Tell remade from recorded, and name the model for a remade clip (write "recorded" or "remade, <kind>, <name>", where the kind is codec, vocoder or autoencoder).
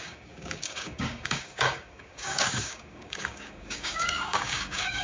remade, codec, DAC